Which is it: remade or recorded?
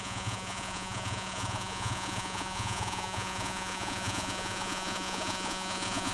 remade